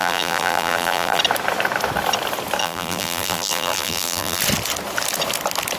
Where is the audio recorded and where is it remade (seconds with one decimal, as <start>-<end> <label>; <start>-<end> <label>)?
0.0-1.2 remade; 1.2-2.6 recorded; 2.6-4.4 remade; 4.4-5.8 recorded

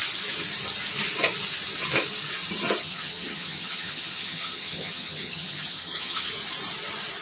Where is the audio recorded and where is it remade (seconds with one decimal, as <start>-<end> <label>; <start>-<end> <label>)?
0.0-2.8 recorded; 2.8-6.3 remade; 6.3-7.2 recorded

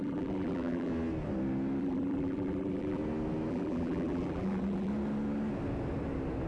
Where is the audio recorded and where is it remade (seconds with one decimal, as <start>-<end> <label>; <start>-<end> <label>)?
0.0-0.9 remade; 0.9-1.8 recorded; 1.8-3.0 remade; 3.0-3.5 recorded; 3.5-4.9 remade; 4.9-6.5 recorded